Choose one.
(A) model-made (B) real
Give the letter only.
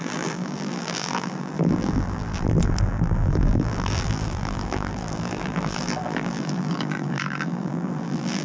A